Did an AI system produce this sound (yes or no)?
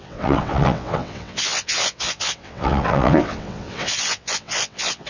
yes